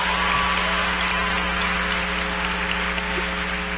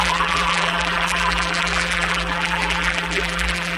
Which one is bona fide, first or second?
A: first